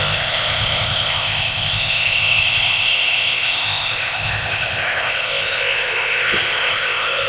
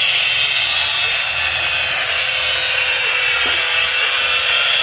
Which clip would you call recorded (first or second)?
second